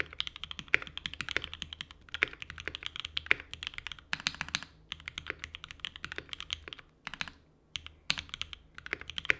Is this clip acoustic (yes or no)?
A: yes